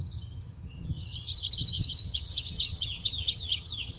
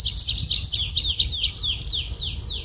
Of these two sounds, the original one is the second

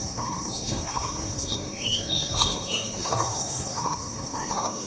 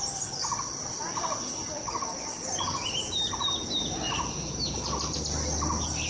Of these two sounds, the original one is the second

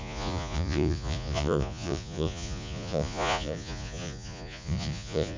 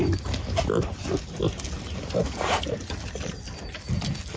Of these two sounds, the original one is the second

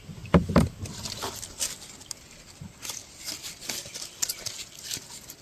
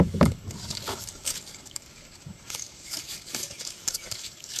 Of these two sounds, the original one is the first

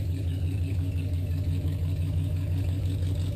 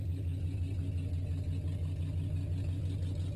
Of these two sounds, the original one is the second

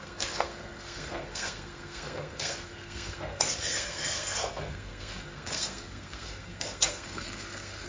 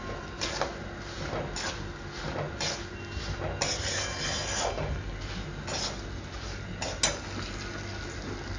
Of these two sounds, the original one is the second